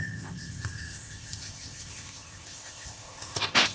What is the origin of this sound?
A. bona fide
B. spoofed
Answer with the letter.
B